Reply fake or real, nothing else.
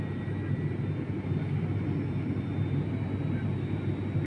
real